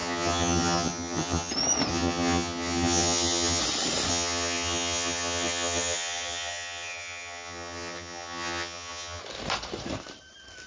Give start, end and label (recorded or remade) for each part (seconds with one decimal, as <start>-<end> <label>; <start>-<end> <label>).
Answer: 0.0-1.5 remade; 1.5-1.9 recorded; 1.9-3.6 remade; 3.6-4.1 recorded; 4.1-9.2 remade; 9.2-10.7 recorded